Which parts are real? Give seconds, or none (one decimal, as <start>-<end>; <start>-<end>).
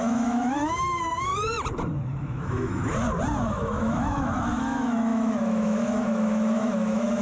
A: 1.3-2.0; 2.8-3.4